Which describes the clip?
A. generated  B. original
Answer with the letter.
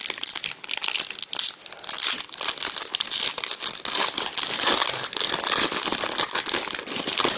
B